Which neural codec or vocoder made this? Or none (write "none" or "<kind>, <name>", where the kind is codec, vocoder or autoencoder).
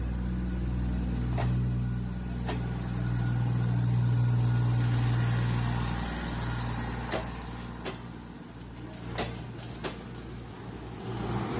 none